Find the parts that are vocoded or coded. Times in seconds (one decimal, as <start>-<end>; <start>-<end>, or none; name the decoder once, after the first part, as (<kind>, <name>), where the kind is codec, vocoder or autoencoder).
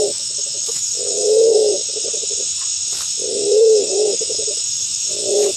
0.0-1.8 (autoencoder, DAC-VAE); 3.3-5.6